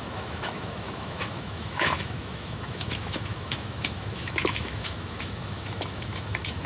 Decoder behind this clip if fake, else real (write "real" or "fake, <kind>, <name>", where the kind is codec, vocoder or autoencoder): fake, autoencoder, DAC-VAE